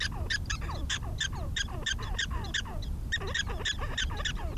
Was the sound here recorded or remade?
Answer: remade